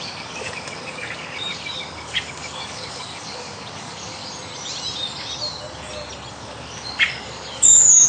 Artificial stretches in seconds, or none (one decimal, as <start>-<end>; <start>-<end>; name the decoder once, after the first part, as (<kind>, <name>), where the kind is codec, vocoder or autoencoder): 0.0-4.2 (codec, DAC); 6.3-8.1